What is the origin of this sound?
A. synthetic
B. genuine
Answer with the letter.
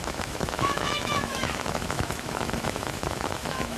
A